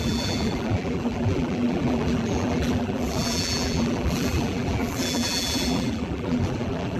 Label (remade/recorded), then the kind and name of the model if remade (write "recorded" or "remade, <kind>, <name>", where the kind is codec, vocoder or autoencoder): remade, vocoder, BigVGAN v2